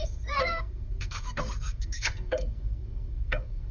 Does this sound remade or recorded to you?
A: remade